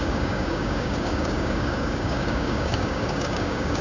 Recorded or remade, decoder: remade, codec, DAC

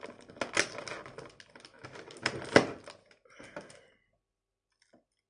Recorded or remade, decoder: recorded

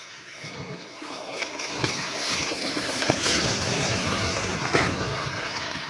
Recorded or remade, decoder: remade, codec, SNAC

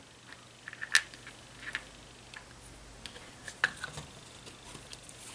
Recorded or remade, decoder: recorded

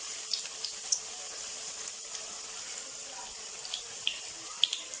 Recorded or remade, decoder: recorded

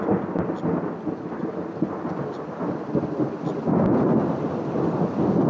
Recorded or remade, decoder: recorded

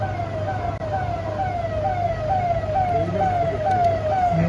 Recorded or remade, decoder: recorded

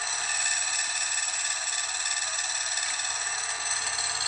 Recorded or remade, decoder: recorded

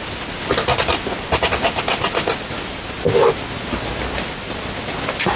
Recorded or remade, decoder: recorded